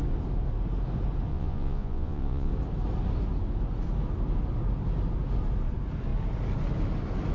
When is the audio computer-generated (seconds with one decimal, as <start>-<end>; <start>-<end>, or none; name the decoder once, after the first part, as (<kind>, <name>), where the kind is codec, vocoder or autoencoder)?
1.3-2.5 (vocoder, Vocos)